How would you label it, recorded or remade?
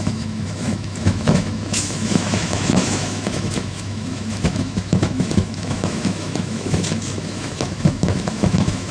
remade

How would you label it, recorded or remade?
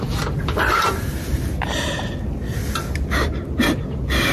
recorded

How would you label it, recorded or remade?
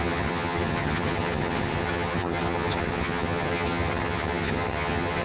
remade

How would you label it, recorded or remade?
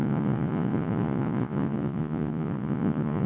remade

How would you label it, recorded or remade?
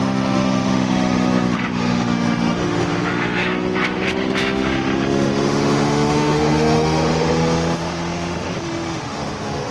remade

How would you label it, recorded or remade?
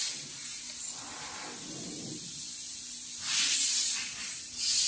recorded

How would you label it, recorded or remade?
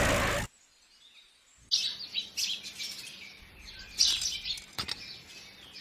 recorded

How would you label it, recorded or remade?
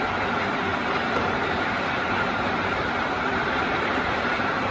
remade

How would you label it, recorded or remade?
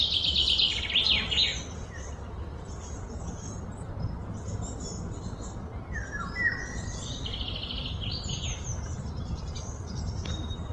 recorded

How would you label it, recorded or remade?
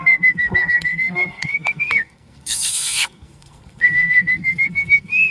remade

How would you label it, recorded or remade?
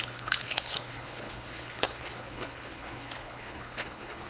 remade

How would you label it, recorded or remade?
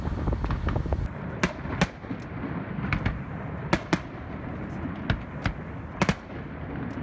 recorded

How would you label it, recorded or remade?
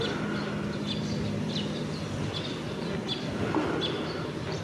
recorded